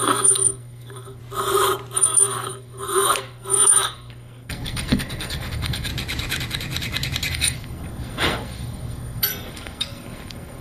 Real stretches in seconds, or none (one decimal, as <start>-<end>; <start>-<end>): 1.2-2.0; 5.9-7.3